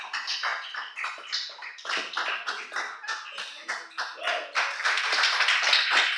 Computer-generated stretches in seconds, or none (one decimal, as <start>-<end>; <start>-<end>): none